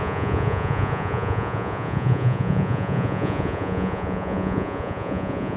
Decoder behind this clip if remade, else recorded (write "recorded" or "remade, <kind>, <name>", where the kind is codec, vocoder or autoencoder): remade, vocoder, Vocos